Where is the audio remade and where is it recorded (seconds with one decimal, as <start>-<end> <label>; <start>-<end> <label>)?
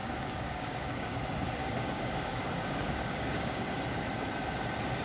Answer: 0.0-1.1 remade; 1.1-1.6 recorded; 1.6-3.6 remade; 3.6-5.0 recorded